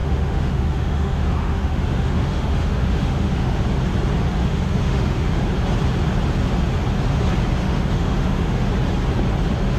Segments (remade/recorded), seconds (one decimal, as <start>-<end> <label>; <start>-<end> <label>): 0.0-3.6 remade; 3.6-4.4 recorded; 4.4-5.5 remade; 5.5-7.6 recorded; 7.6-8.7 remade; 8.7-9.8 recorded